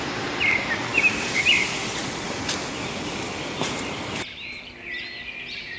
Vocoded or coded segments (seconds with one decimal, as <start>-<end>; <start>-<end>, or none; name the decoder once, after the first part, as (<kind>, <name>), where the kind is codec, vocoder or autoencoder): none